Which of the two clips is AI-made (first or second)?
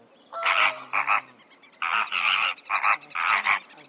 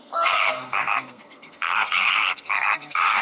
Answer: second